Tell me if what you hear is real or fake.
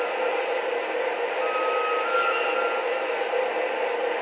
real